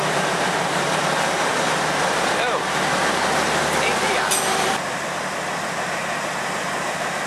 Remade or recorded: remade